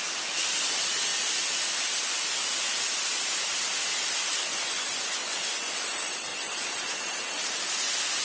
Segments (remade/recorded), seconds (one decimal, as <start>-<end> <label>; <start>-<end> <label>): 0.0-4.5 recorded; 4.5-5.7 remade; 5.7-6.3 recorded; 6.3-7.0 remade; 7.0-8.2 recorded